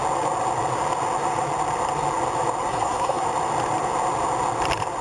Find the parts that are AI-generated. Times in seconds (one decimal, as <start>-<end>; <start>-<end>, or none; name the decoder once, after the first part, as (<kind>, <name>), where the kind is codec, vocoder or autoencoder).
2.7-3.2 (codec, SNAC)